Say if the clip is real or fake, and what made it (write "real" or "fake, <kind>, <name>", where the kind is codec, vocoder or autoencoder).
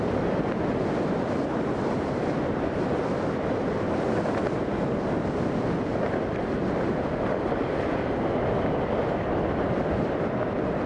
real